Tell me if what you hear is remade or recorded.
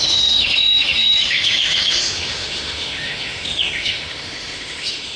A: remade